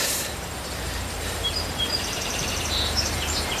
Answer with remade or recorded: remade